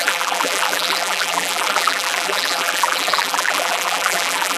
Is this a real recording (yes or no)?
no